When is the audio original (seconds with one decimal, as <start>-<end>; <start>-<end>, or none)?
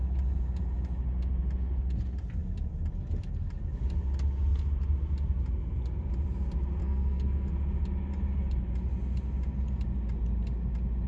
0.0-6.8; 7.5-11.1